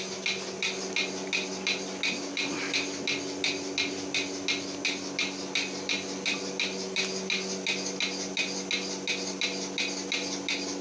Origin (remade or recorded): recorded